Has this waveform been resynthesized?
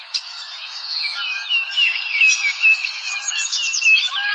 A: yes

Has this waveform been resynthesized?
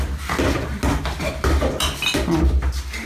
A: no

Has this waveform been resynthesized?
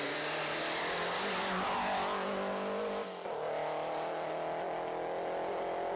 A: no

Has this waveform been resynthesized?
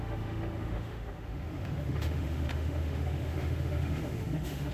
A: yes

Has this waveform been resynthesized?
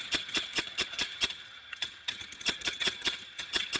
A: yes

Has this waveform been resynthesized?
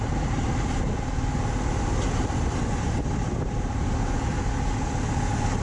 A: no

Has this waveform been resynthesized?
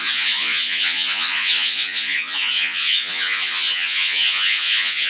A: yes